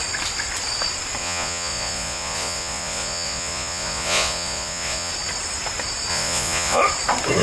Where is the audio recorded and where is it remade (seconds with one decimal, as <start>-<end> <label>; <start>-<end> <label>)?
0.0-1.2 recorded; 1.2-5.1 remade; 5.1-6.1 recorded; 6.1-6.8 remade; 6.8-7.4 recorded